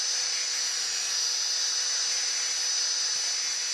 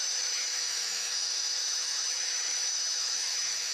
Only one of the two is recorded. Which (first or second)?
first